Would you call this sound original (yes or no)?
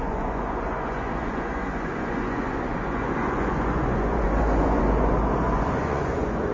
no